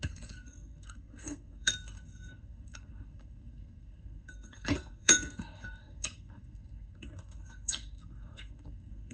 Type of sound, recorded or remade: remade